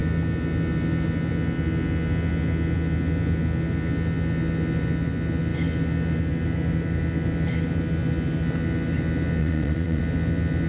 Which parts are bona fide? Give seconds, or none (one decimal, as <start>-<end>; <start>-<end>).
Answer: 0.0-9.4; 10.0-10.7